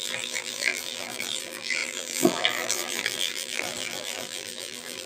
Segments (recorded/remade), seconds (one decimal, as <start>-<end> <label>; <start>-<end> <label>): 0.0-5.1 remade